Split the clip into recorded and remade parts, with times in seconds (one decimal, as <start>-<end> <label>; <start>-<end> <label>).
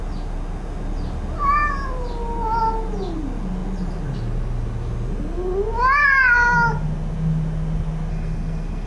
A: 0.0-8.1 recorded; 8.1-8.9 remade